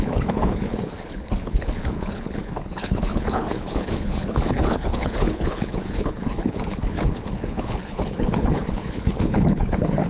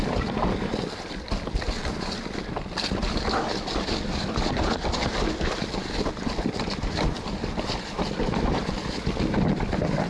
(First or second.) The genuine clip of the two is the second